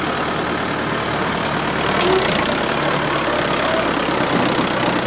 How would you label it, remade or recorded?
recorded